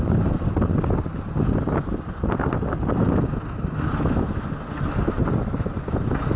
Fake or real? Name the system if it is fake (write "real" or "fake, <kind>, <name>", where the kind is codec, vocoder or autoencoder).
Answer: real